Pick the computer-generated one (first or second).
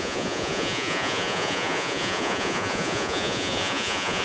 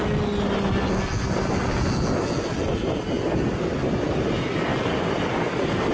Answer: first